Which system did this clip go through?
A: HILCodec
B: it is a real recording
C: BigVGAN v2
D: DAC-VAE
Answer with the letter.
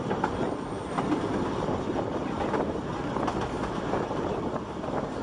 B